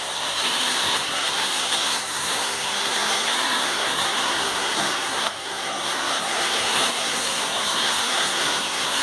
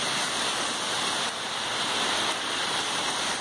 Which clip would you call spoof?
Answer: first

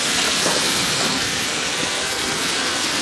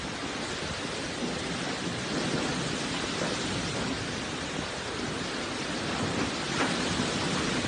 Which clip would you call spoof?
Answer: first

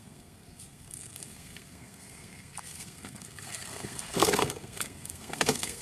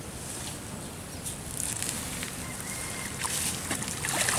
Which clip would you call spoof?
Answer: first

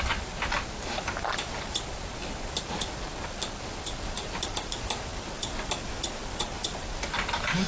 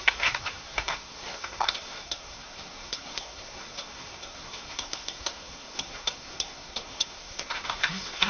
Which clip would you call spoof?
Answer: second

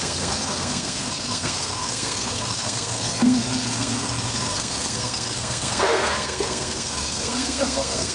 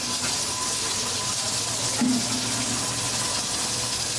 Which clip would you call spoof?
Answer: first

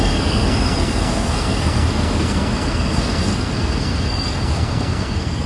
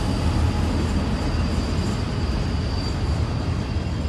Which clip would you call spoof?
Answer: first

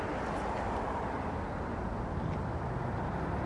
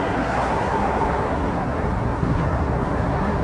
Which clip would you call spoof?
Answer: second